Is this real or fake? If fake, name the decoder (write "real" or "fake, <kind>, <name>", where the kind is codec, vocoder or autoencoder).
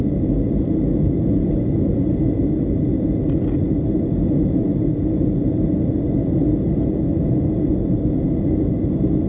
real